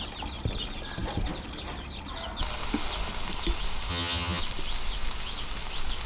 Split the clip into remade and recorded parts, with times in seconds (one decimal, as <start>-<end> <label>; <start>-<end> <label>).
0.0-3.9 recorded; 3.9-4.4 remade; 4.4-6.1 recorded